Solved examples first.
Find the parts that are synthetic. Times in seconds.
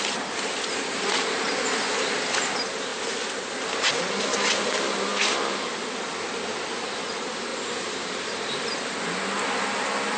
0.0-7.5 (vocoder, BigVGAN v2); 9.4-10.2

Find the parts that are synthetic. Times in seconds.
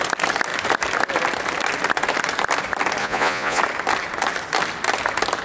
3.0-3.6 (vocoder, Vocos)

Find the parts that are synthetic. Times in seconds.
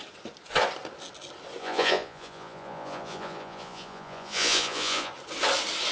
1.6-5.1 (vocoder, Vocos)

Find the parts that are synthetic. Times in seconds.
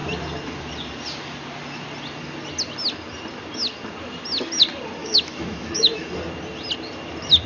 5.0-6.1 (autoencoder, DAC-VAE)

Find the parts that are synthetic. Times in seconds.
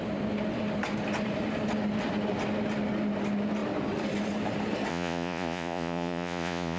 4.9-6.8 (vocoder, Vocos)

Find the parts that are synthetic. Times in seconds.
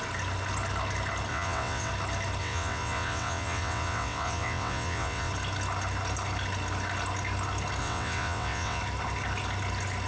1.3-1.9 (vocoder, WaveNeXt); 2.4-5.3; 7.8-8.8